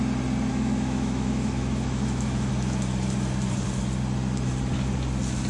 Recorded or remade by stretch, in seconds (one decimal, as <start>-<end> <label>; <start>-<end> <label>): 0.0-0.5 recorded; 0.5-2.5 remade; 2.5-5.5 recorded